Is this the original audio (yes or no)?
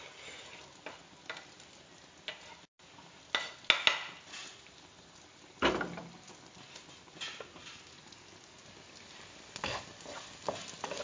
yes